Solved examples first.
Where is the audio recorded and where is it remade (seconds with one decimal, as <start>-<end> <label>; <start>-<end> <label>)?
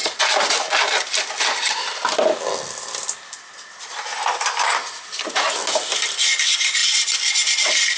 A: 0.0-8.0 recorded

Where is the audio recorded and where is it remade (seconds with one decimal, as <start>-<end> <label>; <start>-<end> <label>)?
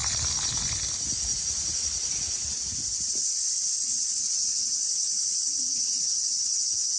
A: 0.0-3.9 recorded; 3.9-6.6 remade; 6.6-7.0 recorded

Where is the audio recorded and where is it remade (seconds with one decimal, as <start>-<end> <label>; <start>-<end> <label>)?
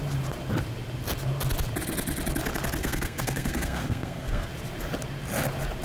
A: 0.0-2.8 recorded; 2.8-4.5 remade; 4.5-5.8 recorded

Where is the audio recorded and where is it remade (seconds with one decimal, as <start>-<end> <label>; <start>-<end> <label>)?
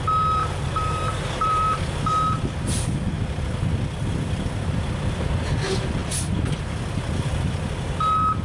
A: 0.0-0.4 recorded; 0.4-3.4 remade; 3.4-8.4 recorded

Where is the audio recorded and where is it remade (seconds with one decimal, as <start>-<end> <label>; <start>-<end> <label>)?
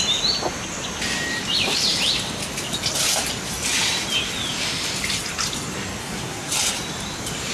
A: 0.0-6.0 recorded; 6.0-6.5 remade; 6.5-7.5 recorded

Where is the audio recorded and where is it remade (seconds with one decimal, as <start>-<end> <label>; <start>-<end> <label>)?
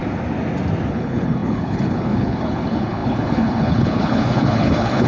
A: 0.0-0.9 recorded; 0.9-5.1 remade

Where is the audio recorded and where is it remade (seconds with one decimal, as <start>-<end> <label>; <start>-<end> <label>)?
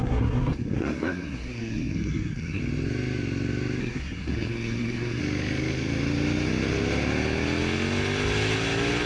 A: 0.0-2.6 remade; 2.6-3.8 recorded; 3.8-5.2 remade; 5.2-9.1 recorded